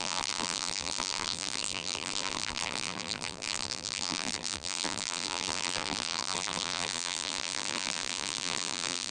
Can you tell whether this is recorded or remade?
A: remade